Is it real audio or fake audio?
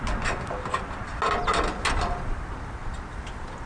real